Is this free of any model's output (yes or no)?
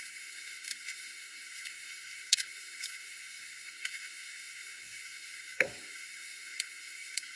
no